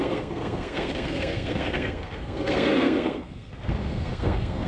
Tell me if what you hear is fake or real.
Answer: fake